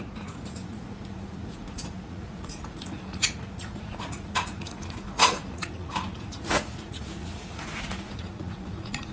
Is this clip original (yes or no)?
no